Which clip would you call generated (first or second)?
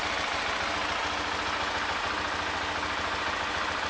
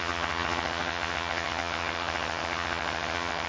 second